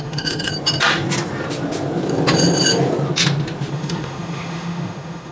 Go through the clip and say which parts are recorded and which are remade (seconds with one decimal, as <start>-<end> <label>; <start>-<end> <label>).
0.0-0.5 remade; 0.5-3.7 recorded; 3.7-5.3 remade